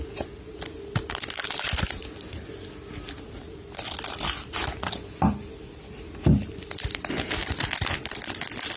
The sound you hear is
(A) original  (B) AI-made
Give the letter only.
A